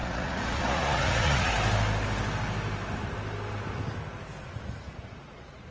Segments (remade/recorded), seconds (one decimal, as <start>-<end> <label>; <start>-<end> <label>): 0.0-1.5 remade; 1.5-4.4 recorded; 4.4-5.7 remade